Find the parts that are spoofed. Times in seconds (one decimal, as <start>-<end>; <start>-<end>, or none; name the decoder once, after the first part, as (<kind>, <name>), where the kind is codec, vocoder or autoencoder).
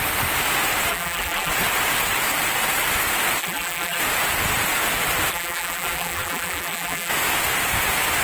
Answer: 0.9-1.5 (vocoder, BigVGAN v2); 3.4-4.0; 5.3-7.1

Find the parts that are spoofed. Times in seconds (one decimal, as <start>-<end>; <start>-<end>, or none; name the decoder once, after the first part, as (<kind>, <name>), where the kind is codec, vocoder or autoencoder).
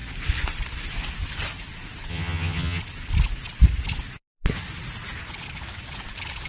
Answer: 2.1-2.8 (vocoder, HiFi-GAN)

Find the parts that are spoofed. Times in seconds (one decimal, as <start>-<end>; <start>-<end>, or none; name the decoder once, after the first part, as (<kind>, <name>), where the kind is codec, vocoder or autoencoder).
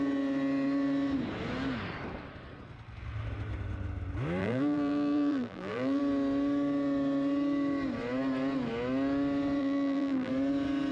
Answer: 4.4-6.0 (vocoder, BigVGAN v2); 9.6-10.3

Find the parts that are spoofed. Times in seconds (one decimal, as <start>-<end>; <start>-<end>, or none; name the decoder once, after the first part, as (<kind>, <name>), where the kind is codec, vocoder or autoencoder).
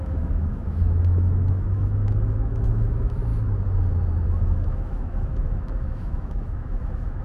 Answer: 0.0-3.3 (autoencoder, DAC-VAE); 4.3-7.2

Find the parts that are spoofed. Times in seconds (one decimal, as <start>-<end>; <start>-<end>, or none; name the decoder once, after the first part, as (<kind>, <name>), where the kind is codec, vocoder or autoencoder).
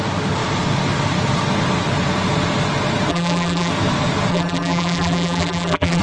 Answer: 3.1-3.7 (vocoder, BigVGAN v2); 4.3-6.0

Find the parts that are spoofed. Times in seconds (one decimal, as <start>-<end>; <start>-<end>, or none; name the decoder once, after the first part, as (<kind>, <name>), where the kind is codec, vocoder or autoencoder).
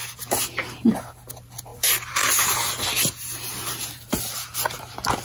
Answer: none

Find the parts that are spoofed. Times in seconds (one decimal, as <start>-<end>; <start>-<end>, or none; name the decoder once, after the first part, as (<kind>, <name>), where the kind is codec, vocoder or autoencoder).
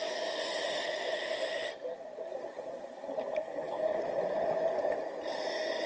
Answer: 3.4-4.0 (codec, SNAC)